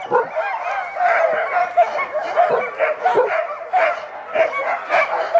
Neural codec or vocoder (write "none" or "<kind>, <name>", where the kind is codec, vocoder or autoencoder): none